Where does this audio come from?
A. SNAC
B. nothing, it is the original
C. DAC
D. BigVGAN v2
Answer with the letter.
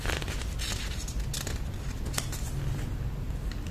B